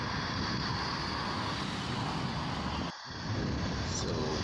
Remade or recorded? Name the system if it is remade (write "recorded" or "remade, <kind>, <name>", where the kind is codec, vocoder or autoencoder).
recorded